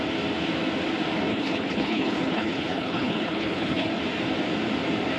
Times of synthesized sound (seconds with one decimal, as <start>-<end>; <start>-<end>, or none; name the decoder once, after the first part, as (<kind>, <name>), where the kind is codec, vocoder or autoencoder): 1.3-3.9 (codec, HILCodec)